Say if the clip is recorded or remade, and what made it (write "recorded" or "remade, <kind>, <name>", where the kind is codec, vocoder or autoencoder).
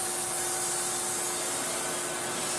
recorded